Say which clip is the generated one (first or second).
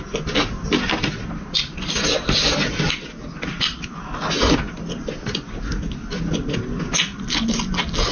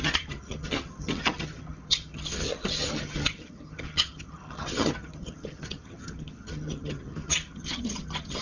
second